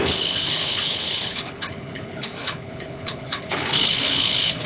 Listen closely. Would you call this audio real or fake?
fake